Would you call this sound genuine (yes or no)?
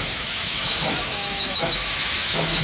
no